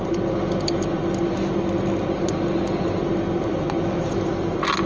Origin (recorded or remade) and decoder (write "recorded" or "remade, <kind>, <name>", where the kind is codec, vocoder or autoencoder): recorded